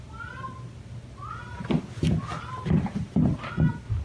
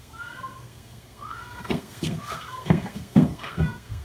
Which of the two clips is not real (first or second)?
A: second